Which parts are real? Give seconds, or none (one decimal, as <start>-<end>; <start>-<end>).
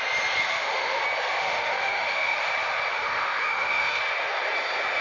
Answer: 0.0-0.4; 1.0-1.4; 2.4-2.9; 4.0-5.0